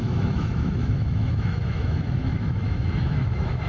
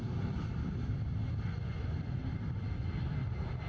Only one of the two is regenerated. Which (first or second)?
first